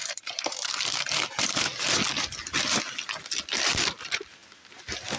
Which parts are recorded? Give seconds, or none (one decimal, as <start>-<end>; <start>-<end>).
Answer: 0.7-5.2